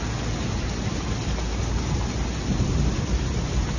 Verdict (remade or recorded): recorded